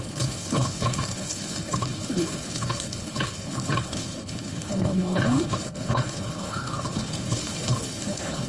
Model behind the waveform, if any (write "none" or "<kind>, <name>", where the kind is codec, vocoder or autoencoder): codec, HILCodec